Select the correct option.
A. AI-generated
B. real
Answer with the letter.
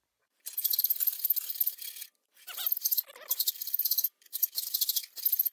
A